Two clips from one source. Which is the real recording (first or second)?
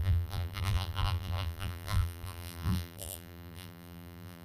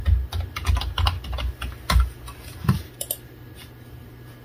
second